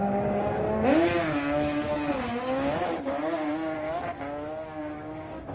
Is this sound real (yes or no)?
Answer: no